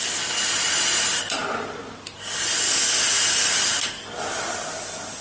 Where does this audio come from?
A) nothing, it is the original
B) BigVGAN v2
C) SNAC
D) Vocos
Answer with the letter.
A